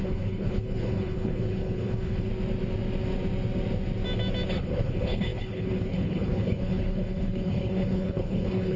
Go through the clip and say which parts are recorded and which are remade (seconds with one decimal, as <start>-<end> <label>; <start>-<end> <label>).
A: 0.0-2.3 remade; 2.3-4.5 recorded; 4.5-8.8 remade